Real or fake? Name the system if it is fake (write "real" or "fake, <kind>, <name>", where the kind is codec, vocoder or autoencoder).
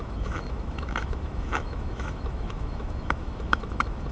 fake, autoencoder, DAC-VAE